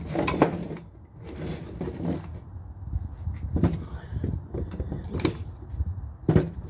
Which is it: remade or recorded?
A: recorded